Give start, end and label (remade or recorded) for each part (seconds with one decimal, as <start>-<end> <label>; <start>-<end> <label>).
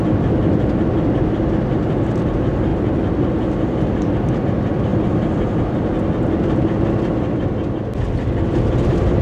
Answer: 0.0-9.2 recorded